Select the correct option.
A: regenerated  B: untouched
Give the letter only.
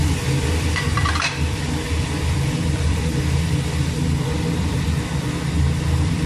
A